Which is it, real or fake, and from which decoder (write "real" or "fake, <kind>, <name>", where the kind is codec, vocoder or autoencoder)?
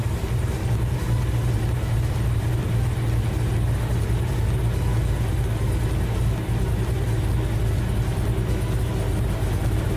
real